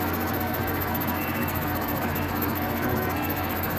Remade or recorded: remade